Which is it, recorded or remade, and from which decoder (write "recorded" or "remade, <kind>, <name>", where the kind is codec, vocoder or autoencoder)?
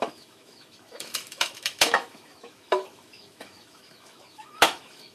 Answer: remade, autoencoder, DAC-VAE